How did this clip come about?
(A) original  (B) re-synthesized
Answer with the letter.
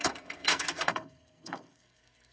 B